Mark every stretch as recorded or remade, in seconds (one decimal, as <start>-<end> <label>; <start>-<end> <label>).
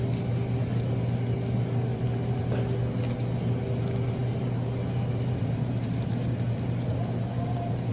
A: 0.0-1.9 recorded; 1.9-2.4 remade; 2.4-4.2 recorded; 4.2-6.1 remade; 6.1-7.9 recorded